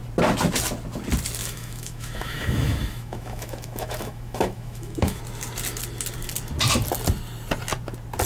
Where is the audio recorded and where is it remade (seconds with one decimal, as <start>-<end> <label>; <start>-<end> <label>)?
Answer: 0.0-1.4 recorded; 1.4-5.2 remade; 5.2-8.3 recorded